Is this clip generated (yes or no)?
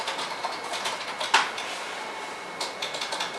no